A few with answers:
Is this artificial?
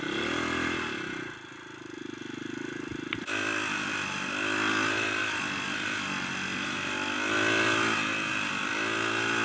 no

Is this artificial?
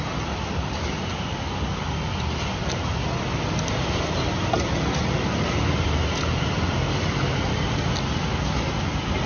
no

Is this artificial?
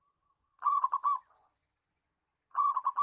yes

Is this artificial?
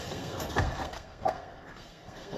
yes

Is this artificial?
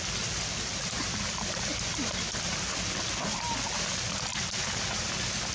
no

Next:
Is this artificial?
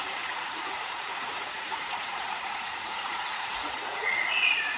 yes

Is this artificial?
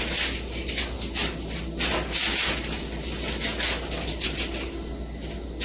no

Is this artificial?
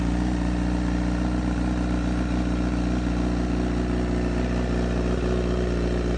no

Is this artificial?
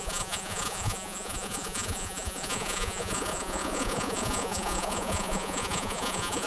yes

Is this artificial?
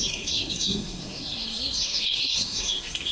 yes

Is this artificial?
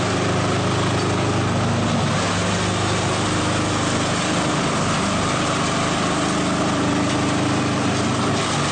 no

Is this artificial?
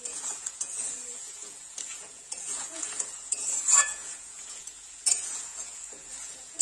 yes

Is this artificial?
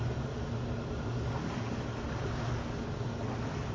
no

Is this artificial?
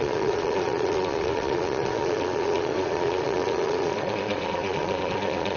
yes